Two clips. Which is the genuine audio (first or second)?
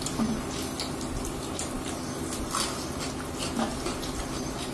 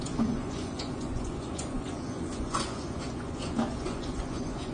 first